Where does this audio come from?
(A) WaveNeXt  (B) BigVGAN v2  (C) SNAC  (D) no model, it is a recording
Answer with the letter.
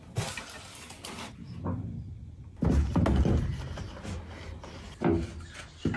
D